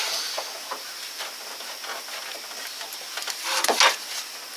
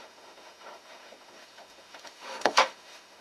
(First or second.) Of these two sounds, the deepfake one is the second